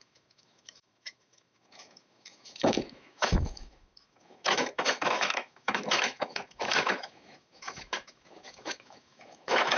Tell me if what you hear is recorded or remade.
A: remade